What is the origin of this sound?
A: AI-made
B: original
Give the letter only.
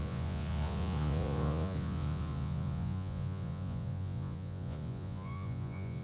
A